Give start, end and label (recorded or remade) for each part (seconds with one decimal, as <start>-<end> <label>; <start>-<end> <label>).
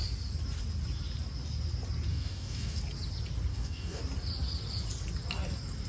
0.0-2.1 recorded; 2.1-2.8 remade; 2.8-3.5 recorded; 3.5-4.0 remade; 4.0-5.9 recorded